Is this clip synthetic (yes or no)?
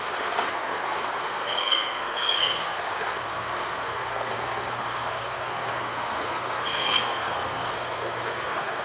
yes